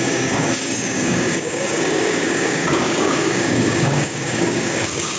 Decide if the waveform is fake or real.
fake